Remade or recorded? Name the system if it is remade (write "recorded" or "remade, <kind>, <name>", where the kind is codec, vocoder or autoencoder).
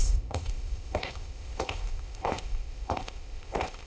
remade, codec, ZipCodec